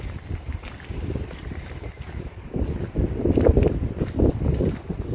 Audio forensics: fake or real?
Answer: real